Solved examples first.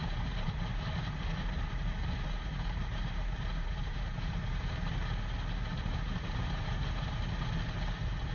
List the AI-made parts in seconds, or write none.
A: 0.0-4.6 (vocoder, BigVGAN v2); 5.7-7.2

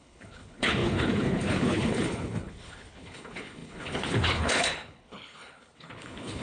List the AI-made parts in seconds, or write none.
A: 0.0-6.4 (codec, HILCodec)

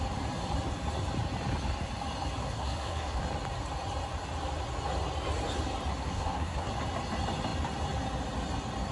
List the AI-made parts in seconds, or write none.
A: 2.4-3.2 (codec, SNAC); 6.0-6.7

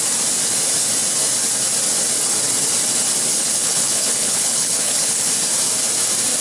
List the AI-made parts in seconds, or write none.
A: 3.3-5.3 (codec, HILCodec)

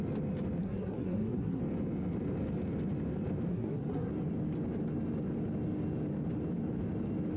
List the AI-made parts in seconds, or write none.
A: 0.6-1.6 (codec, SNAC); 3.5-4.1

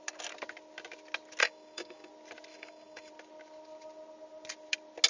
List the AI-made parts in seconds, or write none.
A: 1.4-2.1 (codec, DAC); 2.5-3.1

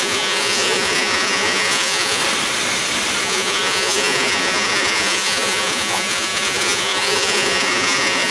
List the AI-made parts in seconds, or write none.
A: 0.0-2.2 (vocoder, Vocos); 3.2-8.3